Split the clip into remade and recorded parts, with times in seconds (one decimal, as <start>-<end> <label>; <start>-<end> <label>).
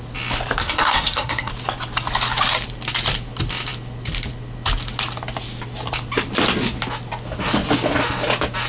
0.0-0.6 recorded; 0.6-1.5 remade; 1.5-8.7 recorded